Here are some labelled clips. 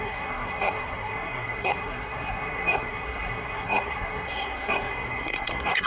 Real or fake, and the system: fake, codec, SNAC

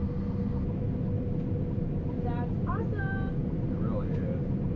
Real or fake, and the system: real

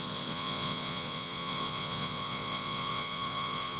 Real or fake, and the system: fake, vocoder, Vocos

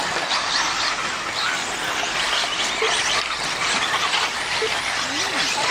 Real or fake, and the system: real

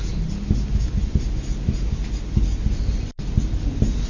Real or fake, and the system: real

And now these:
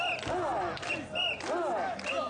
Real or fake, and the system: real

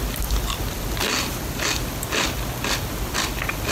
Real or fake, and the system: real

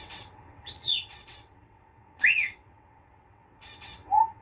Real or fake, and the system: fake, vocoder, WaveNeXt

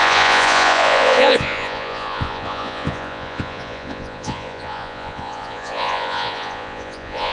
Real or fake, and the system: fake, vocoder, Vocos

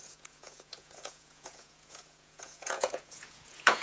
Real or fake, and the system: fake, vocoder, Vocos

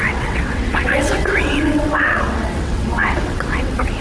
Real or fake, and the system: fake, vocoder, WaveNeXt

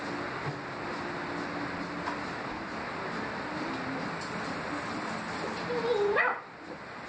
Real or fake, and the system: real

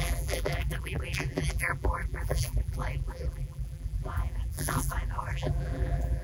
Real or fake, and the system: fake, vocoder, BigVGAN v2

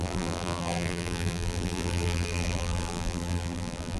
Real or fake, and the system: fake, vocoder, BigVGAN v2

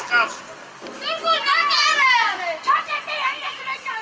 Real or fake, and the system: real